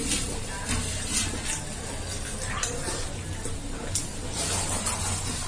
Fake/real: real